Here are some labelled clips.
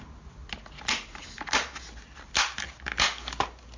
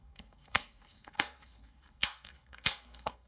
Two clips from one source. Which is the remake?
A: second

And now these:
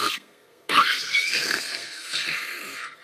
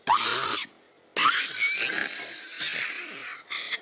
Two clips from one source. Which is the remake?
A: first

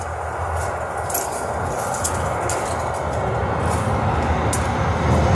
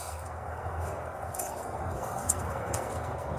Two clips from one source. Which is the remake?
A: second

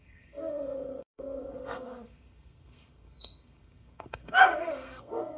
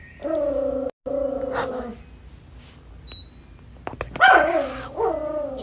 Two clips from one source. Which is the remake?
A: first